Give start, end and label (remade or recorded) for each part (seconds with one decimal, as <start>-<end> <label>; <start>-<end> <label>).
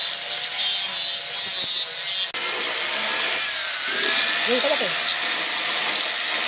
0.0-6.5 recorded